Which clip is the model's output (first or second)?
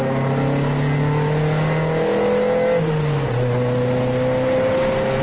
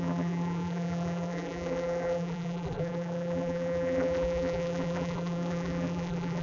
second